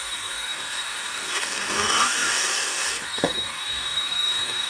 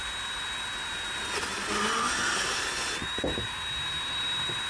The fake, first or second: first